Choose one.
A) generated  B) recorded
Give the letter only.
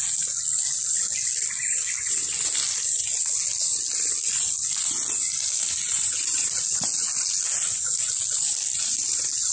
B